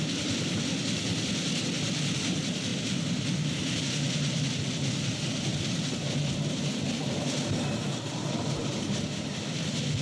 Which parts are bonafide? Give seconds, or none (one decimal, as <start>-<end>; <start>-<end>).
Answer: 0.0-2.7; 3.8-10.0